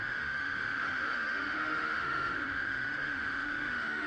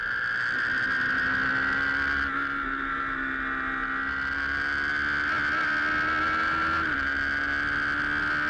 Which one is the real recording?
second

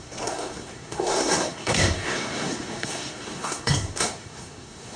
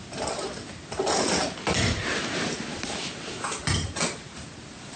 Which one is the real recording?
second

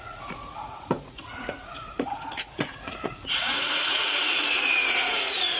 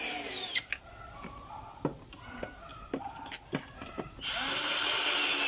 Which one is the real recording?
second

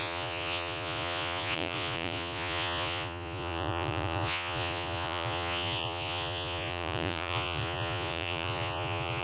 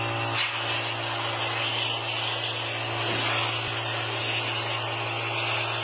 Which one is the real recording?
second